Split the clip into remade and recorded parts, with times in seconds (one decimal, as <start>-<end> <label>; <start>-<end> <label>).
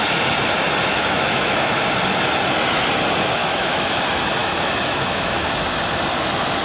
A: 0.0-0.9 recorded; 0.9-1.8 remade; 1.8-3.4 recorded; 3.4-4.0 remade; 4.0-4.4 recorded; 4.4-5.5 remade; 5.5-6.6 recorded